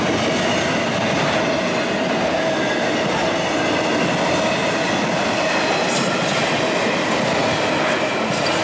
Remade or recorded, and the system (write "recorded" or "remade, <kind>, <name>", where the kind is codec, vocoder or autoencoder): recorded